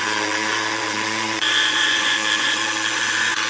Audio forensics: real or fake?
fake